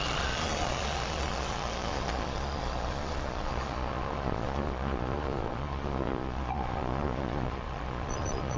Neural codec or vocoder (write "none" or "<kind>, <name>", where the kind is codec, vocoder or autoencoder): vocoder, Vocos